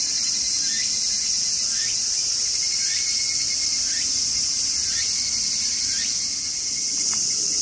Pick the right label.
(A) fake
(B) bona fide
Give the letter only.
B